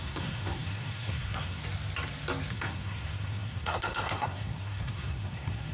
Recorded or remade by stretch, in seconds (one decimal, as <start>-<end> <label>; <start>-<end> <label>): 0.0-1.6 remade; 1.6-2.5 recorded; 2.5-5.7 remade